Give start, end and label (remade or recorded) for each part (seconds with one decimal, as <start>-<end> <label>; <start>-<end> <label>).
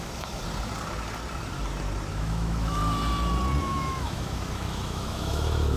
0.0-0.4 remade; 0.4-2.1 recorded; 2.1-2.8 remade; 2.8-3.6 recorded; 3.6-5.8 remade